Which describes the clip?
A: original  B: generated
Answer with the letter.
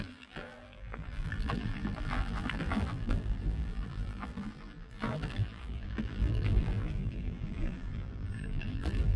B